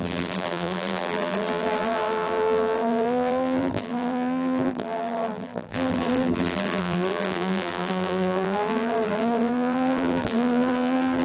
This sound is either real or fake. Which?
fake